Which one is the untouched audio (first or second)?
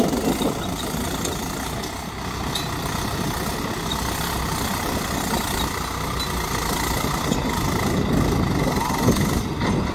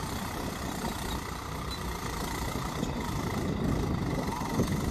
first